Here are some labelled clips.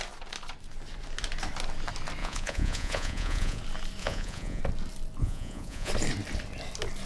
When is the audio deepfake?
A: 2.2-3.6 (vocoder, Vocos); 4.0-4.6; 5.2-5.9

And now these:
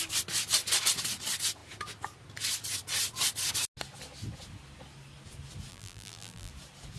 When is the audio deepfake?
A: 5.7-6.5 (vocoder, BigVGAN v2)

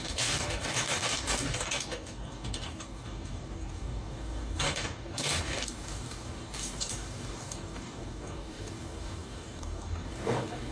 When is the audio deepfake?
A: 0.0-10.7 (codec, DAC)

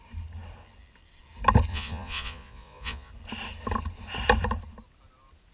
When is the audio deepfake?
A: 1.7-3.1 (vocoder, Vocos)